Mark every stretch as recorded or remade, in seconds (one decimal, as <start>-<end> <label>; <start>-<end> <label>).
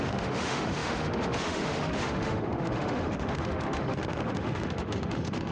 0.0-5.5 remade